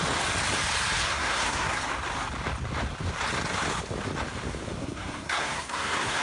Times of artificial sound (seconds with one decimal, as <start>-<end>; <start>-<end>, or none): 1.0-1.8; 4.8-6.2